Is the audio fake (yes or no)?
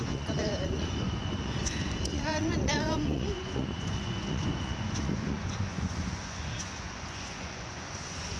yes